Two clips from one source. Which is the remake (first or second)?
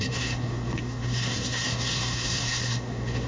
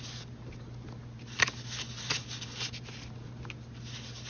first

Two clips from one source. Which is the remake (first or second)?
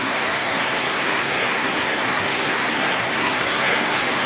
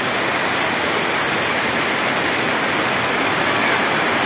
first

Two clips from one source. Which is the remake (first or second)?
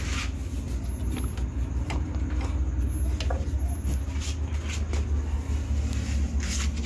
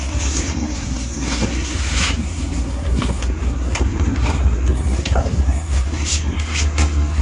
second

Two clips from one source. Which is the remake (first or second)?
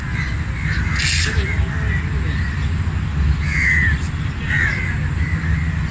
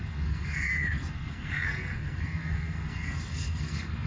second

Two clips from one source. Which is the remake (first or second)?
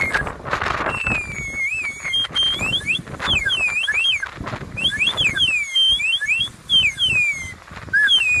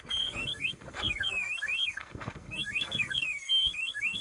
second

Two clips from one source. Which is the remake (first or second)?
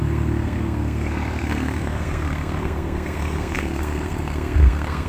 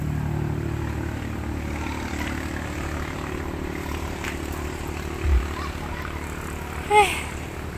first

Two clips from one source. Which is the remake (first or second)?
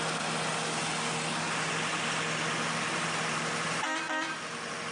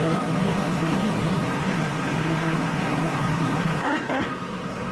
second